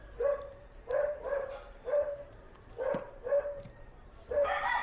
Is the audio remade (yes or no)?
yes